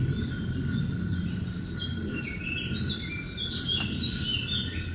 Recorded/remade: recorded